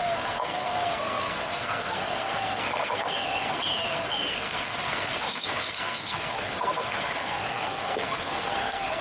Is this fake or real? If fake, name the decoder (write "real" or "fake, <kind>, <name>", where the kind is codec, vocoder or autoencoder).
fake, codec, SNAC